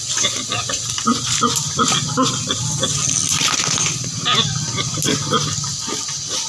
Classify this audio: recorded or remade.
recorded